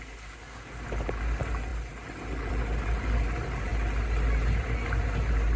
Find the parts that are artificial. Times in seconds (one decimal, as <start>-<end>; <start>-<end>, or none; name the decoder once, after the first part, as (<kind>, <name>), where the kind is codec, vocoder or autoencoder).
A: none